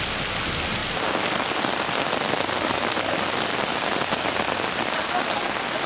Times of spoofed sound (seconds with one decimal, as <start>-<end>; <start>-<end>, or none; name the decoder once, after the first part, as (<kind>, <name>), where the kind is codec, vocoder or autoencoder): none